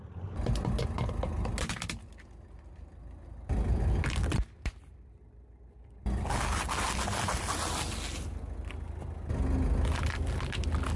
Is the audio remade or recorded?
recorded